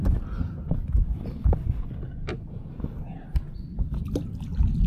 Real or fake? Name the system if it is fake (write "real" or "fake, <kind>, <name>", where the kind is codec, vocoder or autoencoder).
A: real